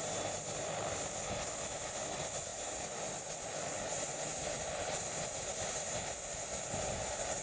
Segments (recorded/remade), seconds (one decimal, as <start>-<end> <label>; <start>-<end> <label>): 0.0-7.4 recorded